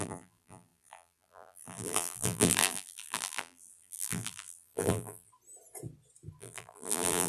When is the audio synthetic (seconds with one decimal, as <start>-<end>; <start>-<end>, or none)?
0.0-5.3; 6.4-7.3